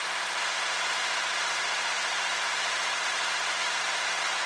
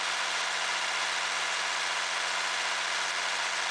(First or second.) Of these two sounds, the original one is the second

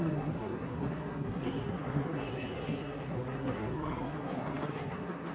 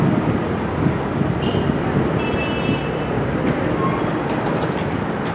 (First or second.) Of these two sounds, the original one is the second